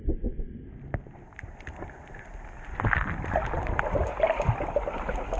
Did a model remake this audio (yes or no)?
no